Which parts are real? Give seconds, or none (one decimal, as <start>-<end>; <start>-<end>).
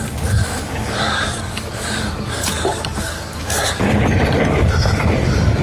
0.0-0.4; 3.8-5.6